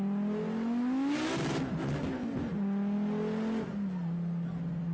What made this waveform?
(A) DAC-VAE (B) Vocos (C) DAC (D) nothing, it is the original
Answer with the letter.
D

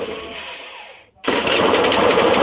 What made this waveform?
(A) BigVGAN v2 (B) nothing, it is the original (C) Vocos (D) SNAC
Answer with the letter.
A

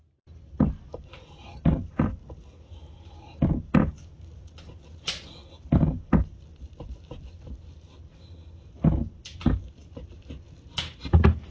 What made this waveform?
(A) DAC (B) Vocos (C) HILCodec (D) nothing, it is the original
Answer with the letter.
D